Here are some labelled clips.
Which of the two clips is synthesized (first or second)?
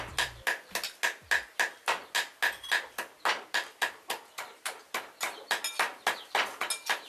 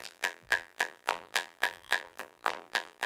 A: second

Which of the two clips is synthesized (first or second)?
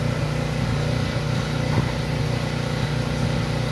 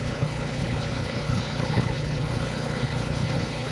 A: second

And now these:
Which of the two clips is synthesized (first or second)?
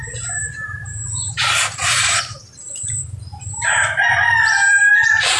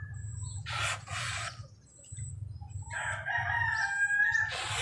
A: first